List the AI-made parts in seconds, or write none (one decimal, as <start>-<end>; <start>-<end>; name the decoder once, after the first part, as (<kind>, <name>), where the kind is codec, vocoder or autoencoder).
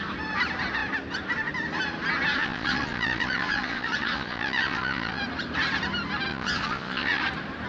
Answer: 2.4-5.2 (vocoder, Vocos); 6.3-7.2